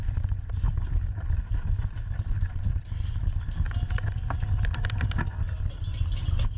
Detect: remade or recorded recorded